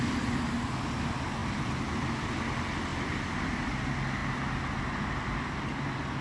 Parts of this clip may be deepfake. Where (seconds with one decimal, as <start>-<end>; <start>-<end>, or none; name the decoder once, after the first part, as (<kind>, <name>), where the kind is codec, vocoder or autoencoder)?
2.9-3.7 (vocoder, BigVGAN v2)